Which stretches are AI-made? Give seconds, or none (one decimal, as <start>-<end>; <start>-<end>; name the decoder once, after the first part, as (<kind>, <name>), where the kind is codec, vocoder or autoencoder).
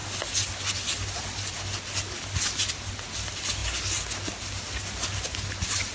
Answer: none